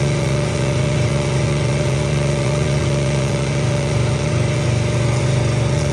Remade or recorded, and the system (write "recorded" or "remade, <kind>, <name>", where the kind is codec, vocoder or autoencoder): remade, vocoder, Vocos